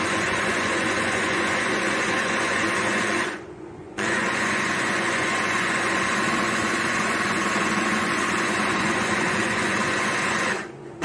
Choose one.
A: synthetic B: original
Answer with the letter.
A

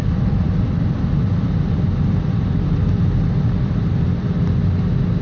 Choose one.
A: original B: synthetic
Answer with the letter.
A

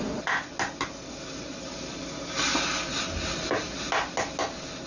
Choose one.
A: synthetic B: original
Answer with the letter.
B